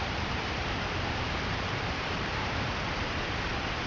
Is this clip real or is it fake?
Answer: fake